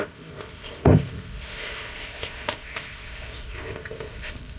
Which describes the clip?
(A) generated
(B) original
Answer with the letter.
A